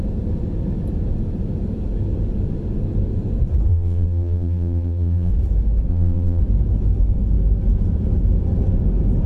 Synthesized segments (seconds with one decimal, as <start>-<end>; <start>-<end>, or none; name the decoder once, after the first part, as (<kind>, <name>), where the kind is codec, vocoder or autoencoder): 3.7-5.3 (vocoder, BigVGAN v2); 5.9-6.4